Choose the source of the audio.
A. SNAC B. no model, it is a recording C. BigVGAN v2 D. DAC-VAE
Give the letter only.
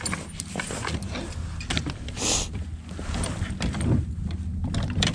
B